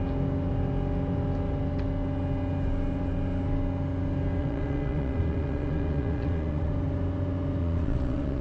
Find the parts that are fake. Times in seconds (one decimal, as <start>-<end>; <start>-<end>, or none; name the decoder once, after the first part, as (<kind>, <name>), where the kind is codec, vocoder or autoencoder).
4.4-6.7 (vocoder, Vocos); 7.6-8.4